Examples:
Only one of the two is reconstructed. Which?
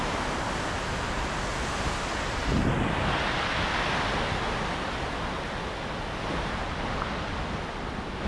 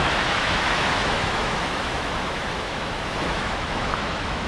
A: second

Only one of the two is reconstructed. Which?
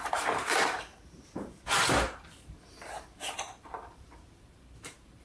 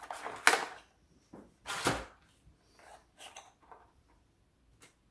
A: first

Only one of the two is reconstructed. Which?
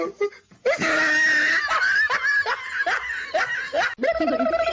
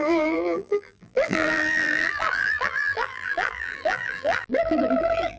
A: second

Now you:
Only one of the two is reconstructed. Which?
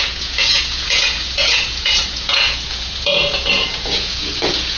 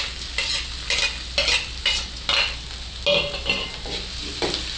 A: first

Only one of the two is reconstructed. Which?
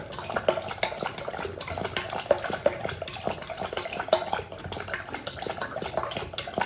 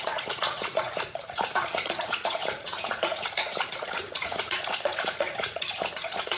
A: second